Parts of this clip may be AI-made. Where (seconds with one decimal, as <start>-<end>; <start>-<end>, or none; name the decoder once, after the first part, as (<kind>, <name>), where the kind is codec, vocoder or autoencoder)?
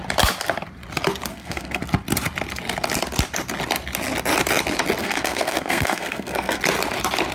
1.3-1.8 (codec, SNAC); 5.0-6.6